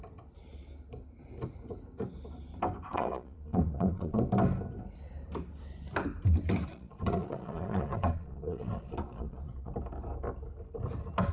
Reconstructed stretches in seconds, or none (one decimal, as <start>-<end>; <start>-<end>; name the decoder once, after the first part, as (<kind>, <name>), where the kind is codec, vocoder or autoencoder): 2.9-4.2 (vocoder, Vocos); 6.7-9.7